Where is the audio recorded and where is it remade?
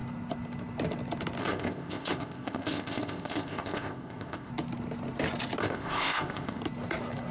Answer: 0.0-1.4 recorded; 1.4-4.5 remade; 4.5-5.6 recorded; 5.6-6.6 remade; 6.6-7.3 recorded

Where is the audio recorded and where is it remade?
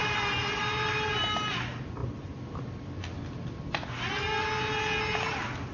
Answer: 0.0-5.7 recorded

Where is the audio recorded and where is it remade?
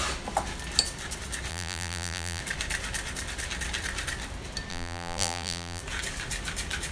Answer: 0.0-1.5 recorded; 1.5-2.4 remade; 2.4-4.7 recorded; 4.7-5.8 remade; 5.8-6.9 recorded